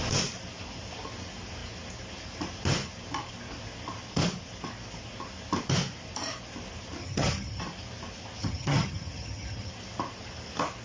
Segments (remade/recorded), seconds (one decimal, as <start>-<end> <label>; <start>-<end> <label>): 0.0-7.0 recorded; 7.0-7.6 remade; 7.6-8.4 recorded; 8.4-9.7 remade; 9.7-10.8 recorded